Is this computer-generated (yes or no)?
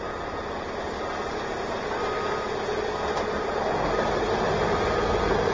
no